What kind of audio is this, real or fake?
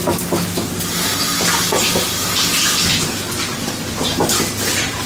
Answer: real